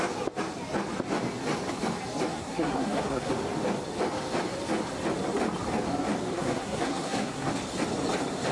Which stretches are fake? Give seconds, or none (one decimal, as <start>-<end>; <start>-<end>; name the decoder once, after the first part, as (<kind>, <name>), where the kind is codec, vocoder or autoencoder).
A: 2.3-3.3 (codec, SNAC); 6.3-7.5